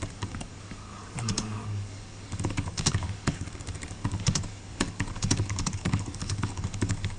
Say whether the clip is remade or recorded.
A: remade